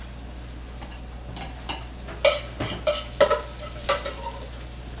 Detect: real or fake real